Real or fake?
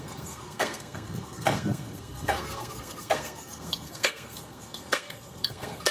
fake